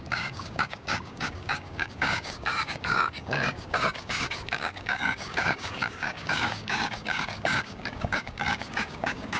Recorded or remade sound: remade